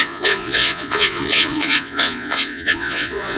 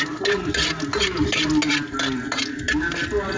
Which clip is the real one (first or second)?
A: second